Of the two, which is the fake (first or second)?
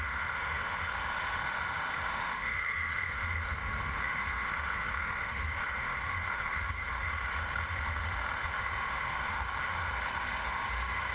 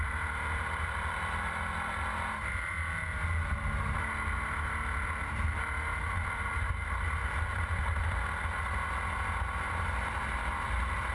first